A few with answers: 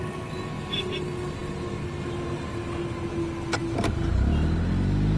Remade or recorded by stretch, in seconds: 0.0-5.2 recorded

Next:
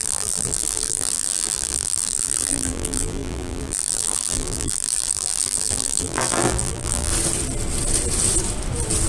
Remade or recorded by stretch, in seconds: 0.0-7.1 remade; 7.1-9.1 recorded

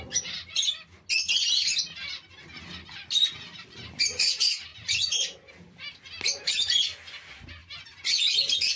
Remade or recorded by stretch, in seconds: 0.0-8.8 recorded

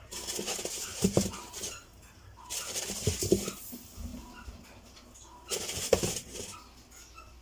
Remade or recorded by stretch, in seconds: 0.0-0.9 recorded; 0.9-3.2 remade; 3.2-7.4 recorded

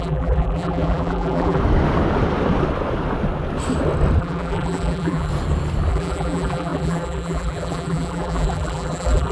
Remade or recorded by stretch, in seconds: 0.0-1.6 remade; 1.6-4.2 recorded; 4.2-5.3 remade; 5.3-5.9 recorded; 5.9-9.3 remade

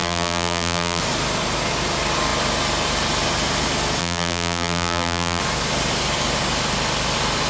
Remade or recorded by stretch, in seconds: 0.0-1.0 remade; 1.0-4.0 recorded; 4.0-5.4 remade; 5.4-7.5 recorded

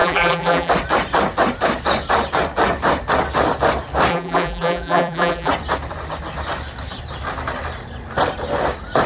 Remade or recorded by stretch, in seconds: 0.0-0.7 remade; 0.7-4.1 recorded; 4.1-5.5 remade; 5.5-9.1 recorded